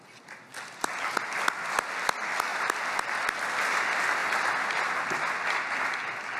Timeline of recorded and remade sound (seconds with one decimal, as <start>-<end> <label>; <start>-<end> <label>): 0.0-2.5 recorded; 2.5-3.6 remade; 3.6-6.4 recorded